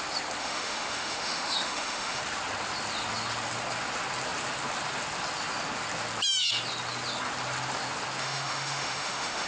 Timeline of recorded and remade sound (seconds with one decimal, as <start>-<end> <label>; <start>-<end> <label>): 0.0-0.4 recorded; 0.4-2.2 remade; 2.2-8.2 recorded; 8.2-9.5 remade